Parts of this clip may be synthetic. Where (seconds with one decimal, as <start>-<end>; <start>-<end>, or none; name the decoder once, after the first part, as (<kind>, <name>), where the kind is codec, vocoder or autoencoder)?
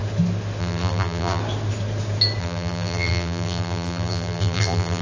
0.6-1.4 (vocoder, BigVGAN v2); 2.4-5.0